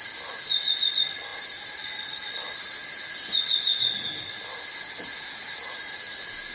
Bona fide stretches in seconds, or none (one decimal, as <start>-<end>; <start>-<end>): 0.0-6.5